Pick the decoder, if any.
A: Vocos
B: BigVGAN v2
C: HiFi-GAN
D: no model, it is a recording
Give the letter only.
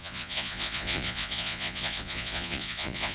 A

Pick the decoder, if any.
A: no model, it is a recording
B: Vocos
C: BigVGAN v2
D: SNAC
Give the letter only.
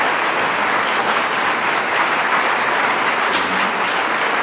A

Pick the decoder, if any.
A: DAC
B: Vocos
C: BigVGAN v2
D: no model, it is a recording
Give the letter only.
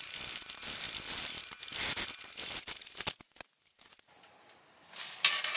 D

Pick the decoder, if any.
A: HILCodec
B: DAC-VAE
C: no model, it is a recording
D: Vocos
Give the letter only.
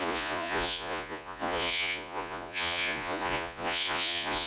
D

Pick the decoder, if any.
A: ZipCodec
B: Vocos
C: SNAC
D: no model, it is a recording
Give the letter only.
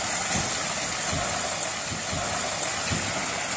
D